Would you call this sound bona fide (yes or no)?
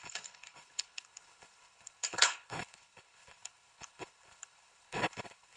no